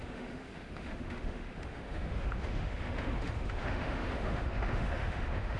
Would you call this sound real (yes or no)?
no